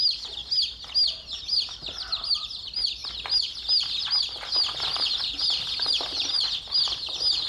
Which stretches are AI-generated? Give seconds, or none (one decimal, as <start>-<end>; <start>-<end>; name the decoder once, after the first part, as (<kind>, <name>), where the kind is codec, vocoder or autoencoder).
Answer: none